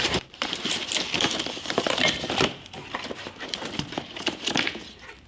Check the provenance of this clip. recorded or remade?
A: remade